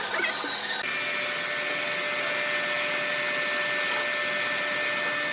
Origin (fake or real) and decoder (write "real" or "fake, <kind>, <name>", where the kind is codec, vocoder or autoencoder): real